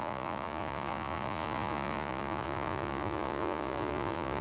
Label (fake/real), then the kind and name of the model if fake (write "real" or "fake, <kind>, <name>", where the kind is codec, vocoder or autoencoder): fake, vocoder, Vocos